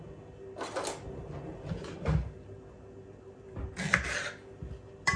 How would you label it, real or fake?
real